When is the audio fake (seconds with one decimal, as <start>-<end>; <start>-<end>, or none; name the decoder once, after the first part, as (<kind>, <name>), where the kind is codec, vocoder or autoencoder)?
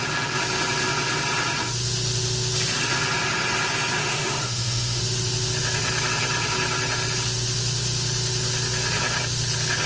4.0-5.0 (autoencoder, DAC-VAE)